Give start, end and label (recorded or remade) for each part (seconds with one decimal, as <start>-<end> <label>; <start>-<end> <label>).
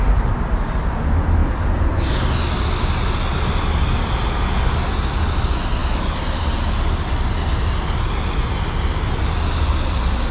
0.0-10.3 recorded